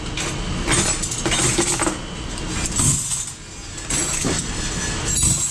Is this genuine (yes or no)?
yes